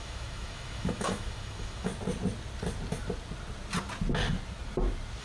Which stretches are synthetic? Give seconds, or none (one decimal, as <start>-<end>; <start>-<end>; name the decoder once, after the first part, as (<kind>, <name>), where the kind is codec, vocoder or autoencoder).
0.0-1.9 (autoencoder, DAC-VAE)